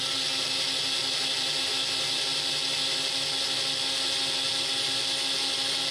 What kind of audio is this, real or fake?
real